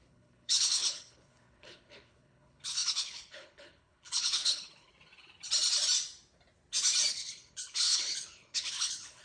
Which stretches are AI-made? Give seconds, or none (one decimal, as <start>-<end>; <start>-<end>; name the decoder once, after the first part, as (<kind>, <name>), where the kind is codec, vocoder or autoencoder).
0.0-4.9 (codec, HILCodec); 7.1-9.2